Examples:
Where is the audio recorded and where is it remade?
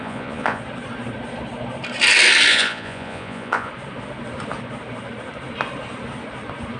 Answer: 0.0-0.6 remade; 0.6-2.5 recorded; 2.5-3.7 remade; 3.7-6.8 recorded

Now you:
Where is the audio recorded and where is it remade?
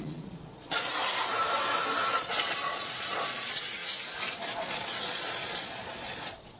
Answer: 0.0-1.0 remade; 1.0-2.1 recorded; 2.1-3.8 remade; 3.8-4.6 recorded; 4.6-6.6 remade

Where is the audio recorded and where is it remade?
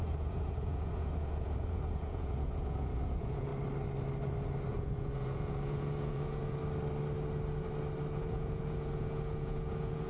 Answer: 0.0-3.5 remade; 3.5-4.7 recorded; 4.7-6.6 remade; 6.6-8.2 recorded; 8.2-10.1 remade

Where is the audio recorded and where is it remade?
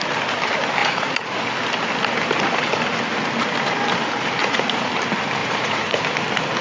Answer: 0.0-0.8 recorded; 0.8-1.4 remade; 1.4-4.4 recorded; 4.4-4.9 remade; 4.9-5.4 recorded; 5.4-6.0 remade; 6.0-6.6 recorded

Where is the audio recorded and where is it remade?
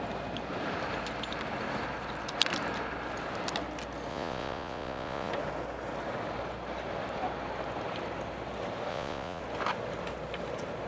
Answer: 0.0-4.1 recorded; 4.1-5.3 remade; 5.3-8.9 recorded; 8.9-9.4 remade; 9.4-10.9 recorded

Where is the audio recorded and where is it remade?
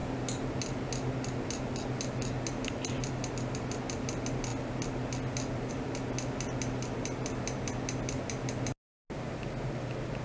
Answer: 0.0-10.2 recorded